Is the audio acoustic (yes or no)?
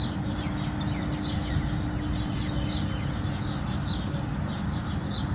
yes